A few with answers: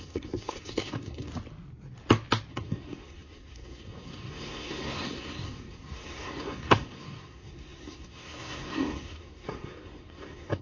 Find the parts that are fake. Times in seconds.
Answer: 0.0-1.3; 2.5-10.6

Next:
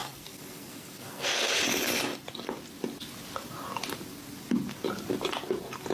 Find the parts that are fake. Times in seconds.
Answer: 0.0-1.6

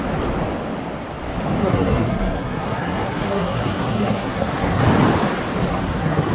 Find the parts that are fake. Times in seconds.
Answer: 1.6-4.8; 5.7-6.3

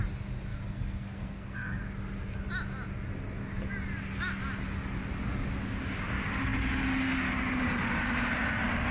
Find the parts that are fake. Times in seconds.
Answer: 0.5-1.8